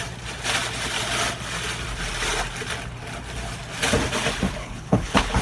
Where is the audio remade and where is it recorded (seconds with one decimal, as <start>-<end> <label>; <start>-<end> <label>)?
0.0-4.6 recorded; 4.6-5.4 remade